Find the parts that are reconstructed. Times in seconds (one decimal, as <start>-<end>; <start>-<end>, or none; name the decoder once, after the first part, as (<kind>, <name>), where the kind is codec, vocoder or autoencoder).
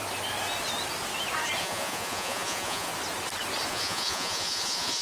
1.6-2.9 (vocoder, Vocos); 3.7-5.0